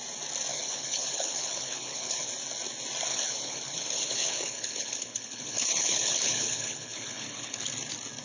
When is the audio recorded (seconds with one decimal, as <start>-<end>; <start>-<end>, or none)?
0.0-0.5; 2.3-3.1; 7.6-8.2